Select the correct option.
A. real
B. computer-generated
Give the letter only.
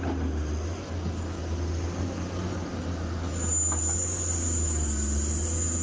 A